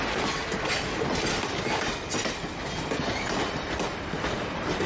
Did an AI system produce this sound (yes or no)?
no